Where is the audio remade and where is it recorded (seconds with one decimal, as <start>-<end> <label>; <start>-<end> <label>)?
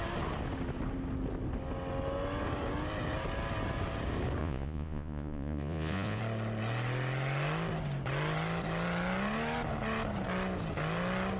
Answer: 0.0-4.4 recorded; 4.4-6.2 remade; 6.2-11.4 recorded